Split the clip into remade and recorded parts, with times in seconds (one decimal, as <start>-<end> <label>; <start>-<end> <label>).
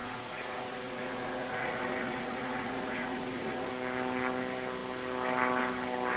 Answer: 0.0-3.7 remade; 3.7-6.2 recorded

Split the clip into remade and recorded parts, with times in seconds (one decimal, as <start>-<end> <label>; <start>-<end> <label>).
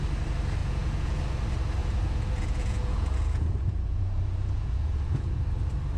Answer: 0.0-0.6 recorded; 0.6-1.2 remade; 1.2-1.8 recorded; 1.8-5.4 remade; 5.4-6.0 recorded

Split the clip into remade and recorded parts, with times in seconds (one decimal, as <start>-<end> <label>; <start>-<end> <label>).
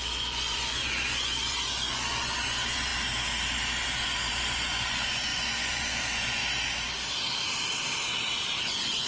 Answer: 0.0-2.9 remade; 2.9-4.3 recorded; 4.3-6.4 remade; 6.4-8.6 recorded; 8.6-9.1 remade